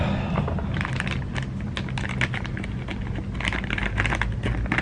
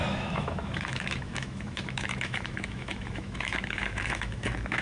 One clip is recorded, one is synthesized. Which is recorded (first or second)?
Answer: first